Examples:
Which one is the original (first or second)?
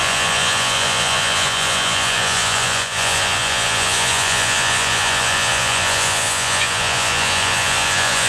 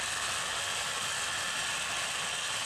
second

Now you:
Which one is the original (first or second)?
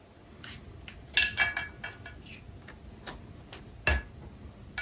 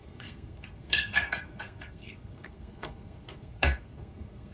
first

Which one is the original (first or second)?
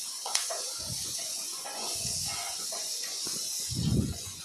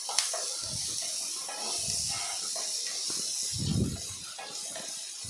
second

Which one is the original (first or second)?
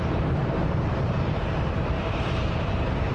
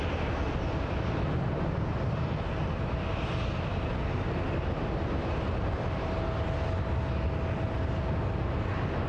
second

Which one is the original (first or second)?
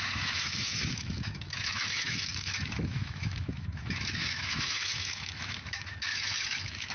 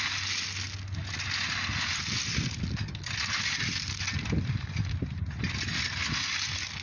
second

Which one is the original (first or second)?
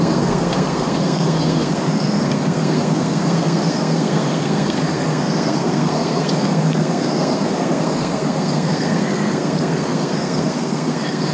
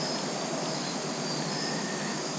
second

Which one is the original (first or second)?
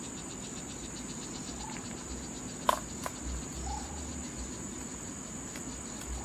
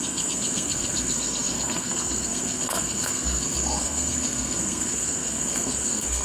first